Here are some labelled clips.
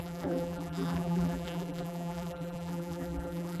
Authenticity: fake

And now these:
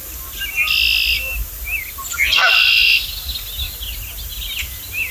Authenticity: real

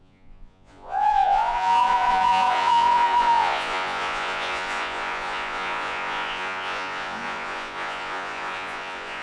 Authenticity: fake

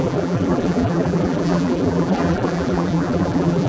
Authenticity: fake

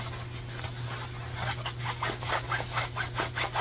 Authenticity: real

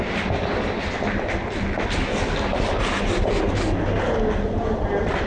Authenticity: real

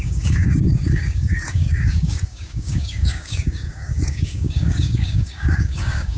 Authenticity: fake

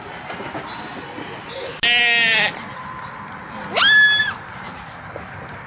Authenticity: real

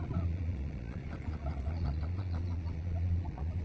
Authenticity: fake